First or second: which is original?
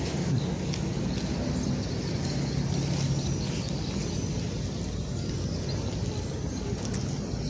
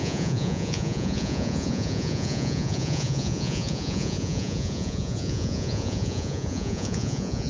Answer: first